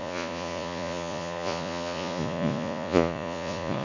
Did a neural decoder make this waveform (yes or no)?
yes